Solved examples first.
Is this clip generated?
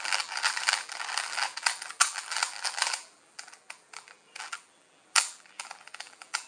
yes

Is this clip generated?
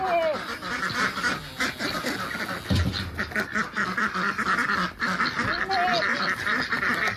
no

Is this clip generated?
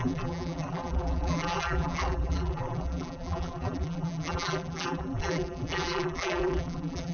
yes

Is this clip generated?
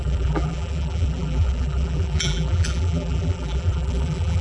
yes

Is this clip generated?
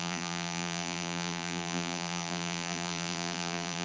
yes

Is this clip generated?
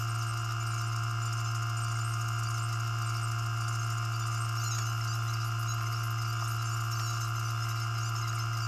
no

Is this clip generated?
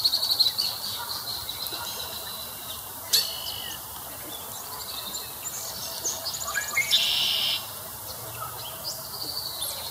no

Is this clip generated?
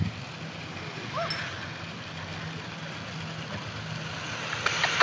no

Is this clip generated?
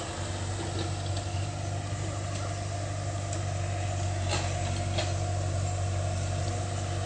no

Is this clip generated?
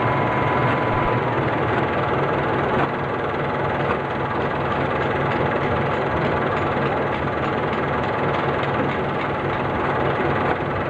yes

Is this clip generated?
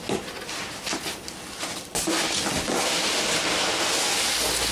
no